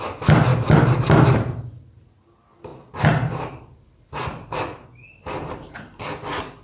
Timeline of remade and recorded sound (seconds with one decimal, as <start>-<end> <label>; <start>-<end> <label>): 0.0-0.5 recorded; 0.5-1.6 remade; 1.6-2.7 recorded; 2.7-5.8 remade; 5.8-6.6 recorded